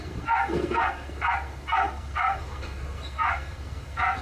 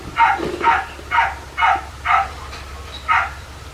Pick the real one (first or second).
second